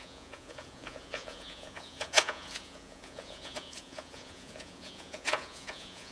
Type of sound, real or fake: fake